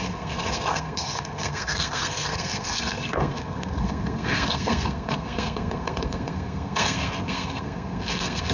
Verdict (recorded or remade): remade